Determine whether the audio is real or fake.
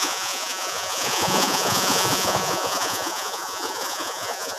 fake